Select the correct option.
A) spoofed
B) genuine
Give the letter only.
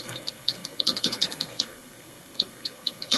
A